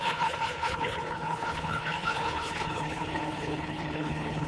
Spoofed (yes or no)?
yes